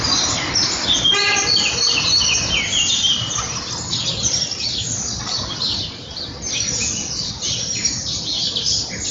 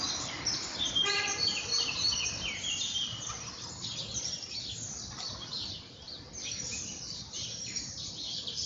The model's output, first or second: second